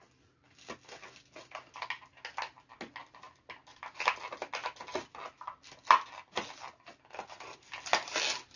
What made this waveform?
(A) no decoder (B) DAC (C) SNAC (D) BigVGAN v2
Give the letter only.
A